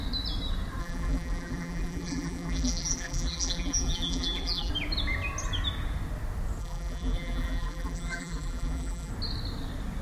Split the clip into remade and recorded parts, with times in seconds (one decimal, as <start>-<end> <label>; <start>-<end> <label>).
0.0-0.8 recorded; 0.8-4.7 remade; 4.7-6.6 recorded; 6.6-9.1 remade; 9.1-10.0 recorded